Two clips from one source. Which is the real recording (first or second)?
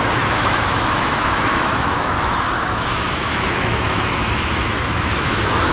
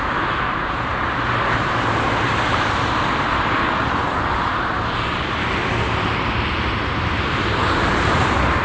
second